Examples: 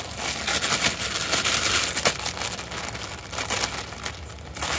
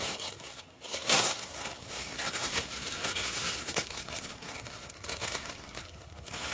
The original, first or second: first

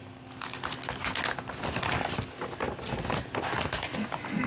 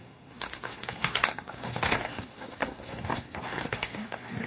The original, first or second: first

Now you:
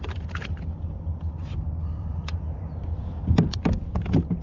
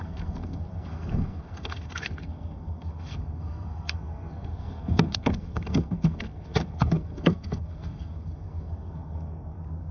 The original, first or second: first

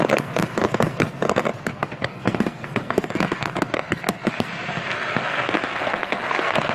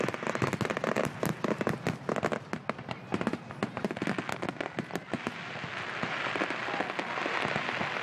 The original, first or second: second